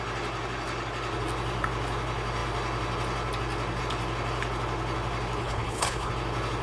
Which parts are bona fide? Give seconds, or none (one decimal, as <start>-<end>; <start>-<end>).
0.0-5.4; 6.1-6.6